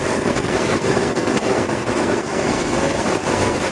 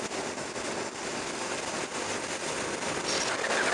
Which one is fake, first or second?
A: first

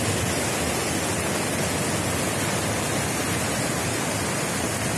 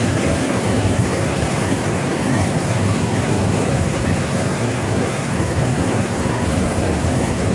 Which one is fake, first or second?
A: second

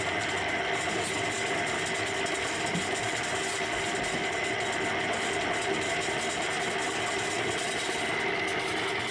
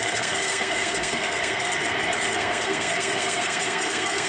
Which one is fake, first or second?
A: second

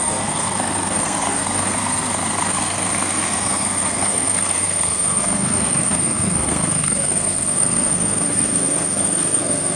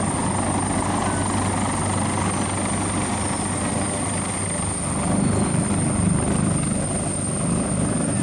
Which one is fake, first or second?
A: first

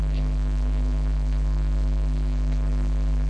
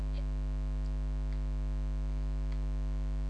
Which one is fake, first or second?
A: first